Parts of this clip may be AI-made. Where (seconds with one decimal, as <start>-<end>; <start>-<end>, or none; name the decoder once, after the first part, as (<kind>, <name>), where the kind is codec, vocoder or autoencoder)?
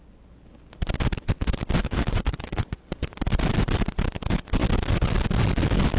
1.8-2.8 (vocoder, Vocos)